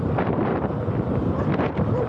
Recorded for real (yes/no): no